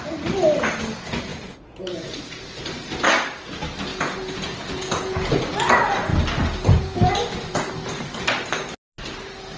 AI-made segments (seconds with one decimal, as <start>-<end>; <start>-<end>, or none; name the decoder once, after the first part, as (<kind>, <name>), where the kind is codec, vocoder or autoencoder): 1.3-2.2 (vocoder, Vocos); 3.9-5.4